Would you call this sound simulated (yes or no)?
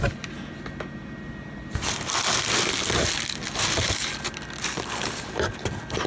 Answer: no